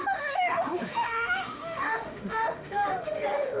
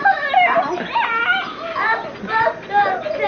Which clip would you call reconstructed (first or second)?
first